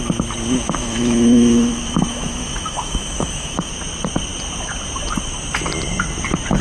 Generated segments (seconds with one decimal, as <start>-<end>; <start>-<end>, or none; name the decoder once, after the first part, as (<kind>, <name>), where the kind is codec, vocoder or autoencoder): 0.8-3.7 (autoencoder, DAC-VAE)